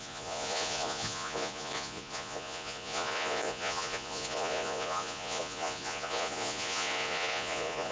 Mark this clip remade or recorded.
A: remade